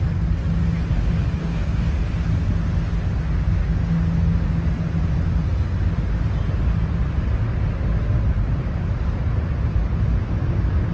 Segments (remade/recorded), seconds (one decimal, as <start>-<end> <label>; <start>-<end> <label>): 0.0-1.4 recorded; 1.4-1.9 remade; 1.9-10.9 recorded